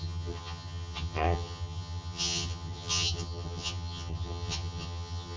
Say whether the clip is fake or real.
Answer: fake